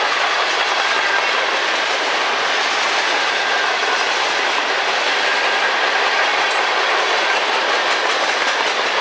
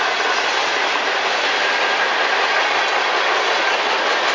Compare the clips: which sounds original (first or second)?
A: second